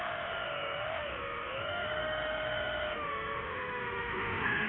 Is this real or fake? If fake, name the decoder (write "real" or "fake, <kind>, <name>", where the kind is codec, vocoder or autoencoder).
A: fake, autoencoder, DAC-VAE